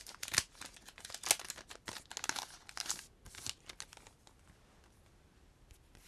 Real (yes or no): yes